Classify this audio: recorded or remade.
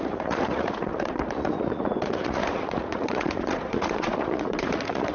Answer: remade